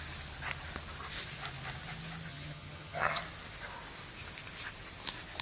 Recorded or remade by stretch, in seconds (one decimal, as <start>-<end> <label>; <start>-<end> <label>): 0.0-2.3 recorded; 2.3-3.2 remade; 3.2-5.4 recorded